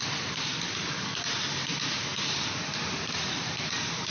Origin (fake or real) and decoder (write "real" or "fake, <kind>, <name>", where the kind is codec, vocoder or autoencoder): fake, vocoder, BigVGAN v2